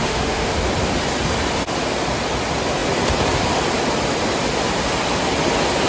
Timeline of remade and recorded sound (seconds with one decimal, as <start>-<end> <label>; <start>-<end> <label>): 0.0-0.5 remade; 0.5-5.9 recorded